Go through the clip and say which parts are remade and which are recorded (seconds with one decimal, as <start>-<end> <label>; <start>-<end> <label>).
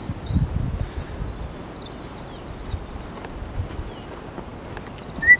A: 0.0-5.4 recorded